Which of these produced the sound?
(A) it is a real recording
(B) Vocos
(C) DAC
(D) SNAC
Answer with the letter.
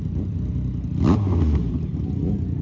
A